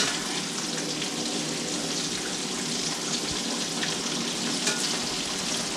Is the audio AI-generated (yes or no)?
no